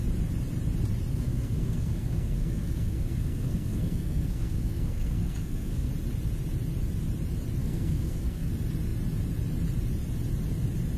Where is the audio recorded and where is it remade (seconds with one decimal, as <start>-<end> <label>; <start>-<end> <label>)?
0.0-1.1 recorded; 1.1-5.9 remade; 5.9-7.6 recorded; 7.6-8.5 remade; 8.5-11.0 recorded